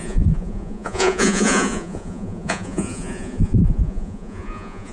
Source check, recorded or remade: remade